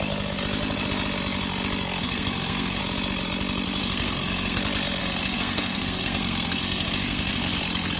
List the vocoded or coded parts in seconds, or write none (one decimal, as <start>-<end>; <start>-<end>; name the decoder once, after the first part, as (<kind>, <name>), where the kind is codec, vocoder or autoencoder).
2.0-2.8 (codec, SNAC); 3.8-4.6; 5.0-7.6